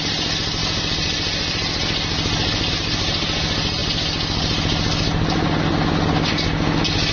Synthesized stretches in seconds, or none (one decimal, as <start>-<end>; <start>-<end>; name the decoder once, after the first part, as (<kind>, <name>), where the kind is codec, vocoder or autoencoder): none